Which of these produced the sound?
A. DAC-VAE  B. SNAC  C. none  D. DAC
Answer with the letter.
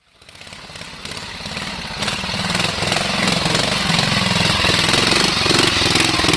C